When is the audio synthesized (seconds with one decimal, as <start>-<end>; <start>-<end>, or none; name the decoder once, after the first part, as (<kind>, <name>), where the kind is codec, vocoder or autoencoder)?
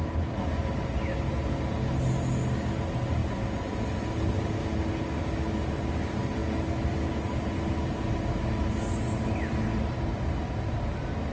none